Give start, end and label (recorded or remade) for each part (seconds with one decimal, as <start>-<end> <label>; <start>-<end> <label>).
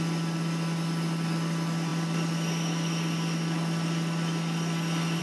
0.0-5.2 recorded